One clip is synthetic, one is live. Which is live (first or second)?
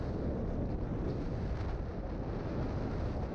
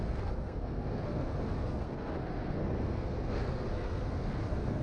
first